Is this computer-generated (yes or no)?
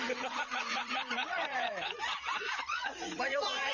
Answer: yes